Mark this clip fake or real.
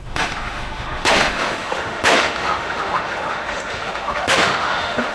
fake